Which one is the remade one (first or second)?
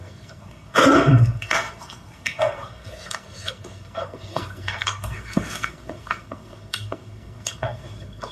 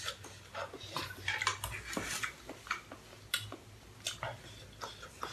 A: first